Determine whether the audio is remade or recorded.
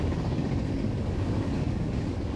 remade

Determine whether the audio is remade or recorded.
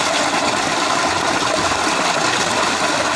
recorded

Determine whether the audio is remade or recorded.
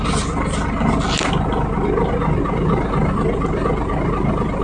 recorded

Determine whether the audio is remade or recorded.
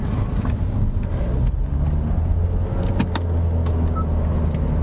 recorded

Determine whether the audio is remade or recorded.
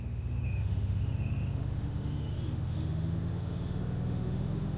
remade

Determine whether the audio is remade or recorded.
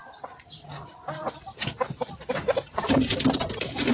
recorded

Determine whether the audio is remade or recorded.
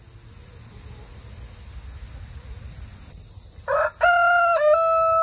recorded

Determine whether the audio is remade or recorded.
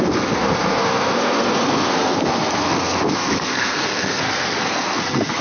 remade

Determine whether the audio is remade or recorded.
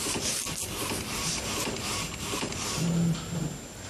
recorded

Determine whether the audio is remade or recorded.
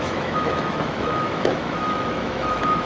remade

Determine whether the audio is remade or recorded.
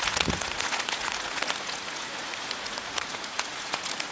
remade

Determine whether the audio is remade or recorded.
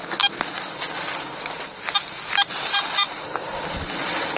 recorded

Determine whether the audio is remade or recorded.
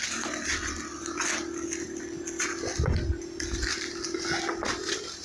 recorded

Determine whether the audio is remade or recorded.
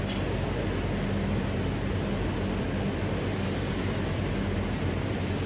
recorded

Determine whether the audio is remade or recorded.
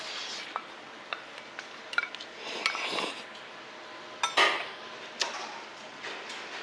recorded